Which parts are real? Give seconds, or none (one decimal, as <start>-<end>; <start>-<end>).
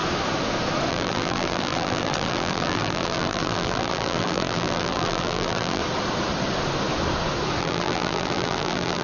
0.0-0.9; 5.8-7.6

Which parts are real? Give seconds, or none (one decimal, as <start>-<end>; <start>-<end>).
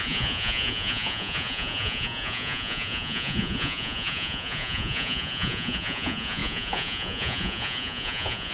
none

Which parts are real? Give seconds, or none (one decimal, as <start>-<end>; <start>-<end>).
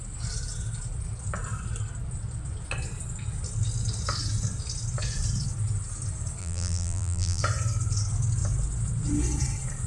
0.0-6.4; 7.4-9.9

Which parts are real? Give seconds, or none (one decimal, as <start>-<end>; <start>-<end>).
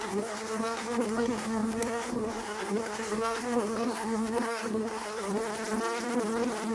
5.3-6.7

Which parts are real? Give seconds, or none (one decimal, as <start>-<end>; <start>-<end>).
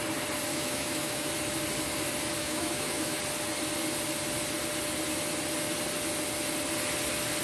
0.0-0.5; 1.3-2.4; 3.2-7.4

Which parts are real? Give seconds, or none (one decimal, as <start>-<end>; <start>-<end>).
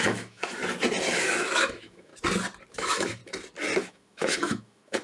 0.6-1.2; 2.1-2.7; 3.2-3.8